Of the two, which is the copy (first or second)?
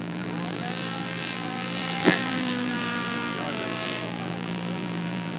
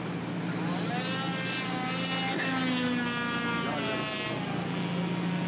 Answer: first